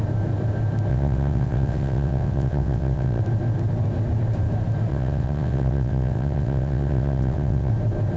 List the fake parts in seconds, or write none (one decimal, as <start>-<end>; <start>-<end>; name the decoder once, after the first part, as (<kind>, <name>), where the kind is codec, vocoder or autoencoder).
0.9-3.2 (vocoder, WaveNeXt); 4.9-7.7